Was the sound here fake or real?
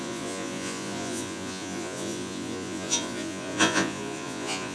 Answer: fake